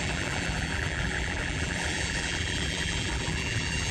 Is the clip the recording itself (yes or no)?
no